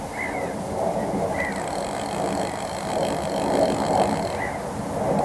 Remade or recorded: recorded